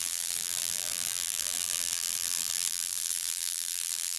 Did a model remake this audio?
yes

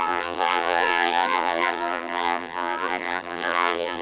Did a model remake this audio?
yes